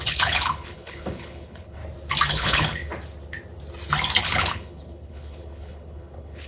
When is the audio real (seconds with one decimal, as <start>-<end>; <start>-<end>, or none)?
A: 1.8-2.3; 2.8-4.2